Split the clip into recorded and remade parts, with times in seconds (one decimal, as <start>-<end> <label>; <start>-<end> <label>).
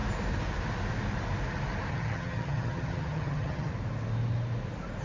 0.0-1.9 recorded; 1.9-3.7 remade; 3.7-5.0 recorded